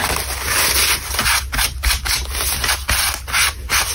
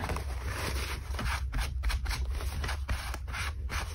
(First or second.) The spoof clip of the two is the second